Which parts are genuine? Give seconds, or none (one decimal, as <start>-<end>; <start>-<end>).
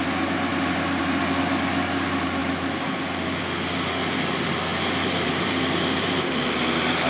0.0-4.7; 6.5-7.1